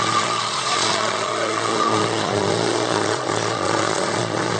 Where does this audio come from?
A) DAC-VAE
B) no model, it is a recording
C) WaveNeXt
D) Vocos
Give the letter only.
D